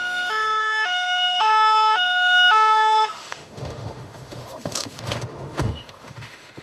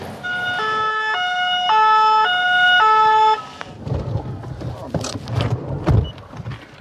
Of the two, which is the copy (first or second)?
first